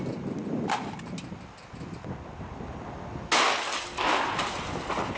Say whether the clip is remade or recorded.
recorded